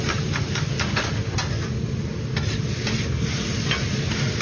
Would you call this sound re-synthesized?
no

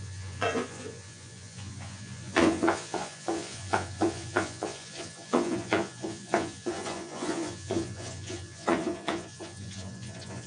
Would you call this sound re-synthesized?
yes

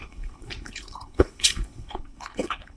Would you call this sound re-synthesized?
yes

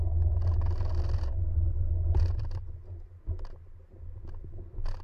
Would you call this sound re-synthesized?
no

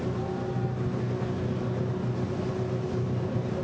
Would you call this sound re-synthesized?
no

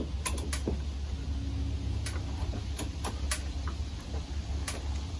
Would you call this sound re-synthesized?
no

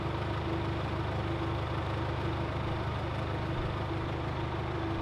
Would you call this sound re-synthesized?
no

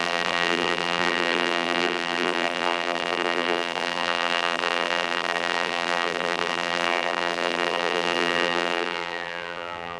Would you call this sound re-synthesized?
yes